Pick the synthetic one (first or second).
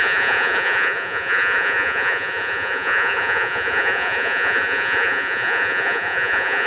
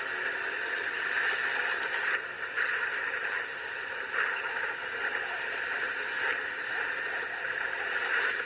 first